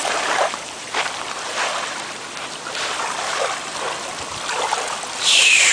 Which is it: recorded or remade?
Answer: remade